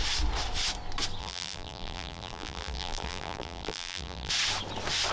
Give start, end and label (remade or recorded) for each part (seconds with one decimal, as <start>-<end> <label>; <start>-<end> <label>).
0.0-1.2 recorded; 1.2-4.3 remade; 4.3-5.1 recorded